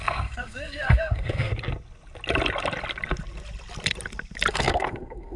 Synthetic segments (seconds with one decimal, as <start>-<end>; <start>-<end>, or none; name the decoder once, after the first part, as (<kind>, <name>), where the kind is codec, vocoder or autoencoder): 0.0-1.5 (codec, SNAC); 4.5-5.4